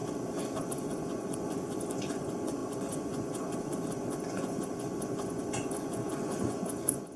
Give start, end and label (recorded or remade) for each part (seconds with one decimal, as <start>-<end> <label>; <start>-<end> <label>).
0.0-0.6 recorded; 0.6-7.2 remade